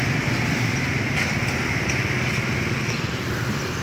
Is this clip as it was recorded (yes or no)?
yes